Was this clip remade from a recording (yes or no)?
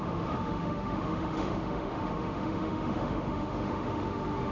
yes